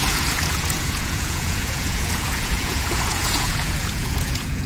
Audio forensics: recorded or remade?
remade